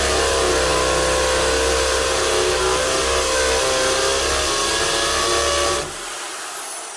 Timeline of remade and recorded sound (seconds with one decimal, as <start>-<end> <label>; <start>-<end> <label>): 0.0-7.0 recorded